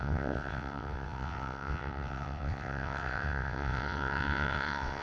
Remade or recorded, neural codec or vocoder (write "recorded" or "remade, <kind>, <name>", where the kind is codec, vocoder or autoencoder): remade, vocoder, WaveNeXt